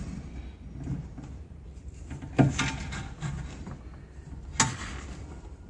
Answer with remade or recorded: recorded